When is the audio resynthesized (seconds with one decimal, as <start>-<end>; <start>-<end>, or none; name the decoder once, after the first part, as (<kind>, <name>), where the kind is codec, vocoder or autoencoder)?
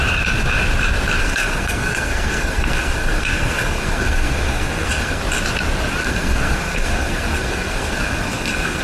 1.2-5.2 (codec, SNAC); 6.0-8.8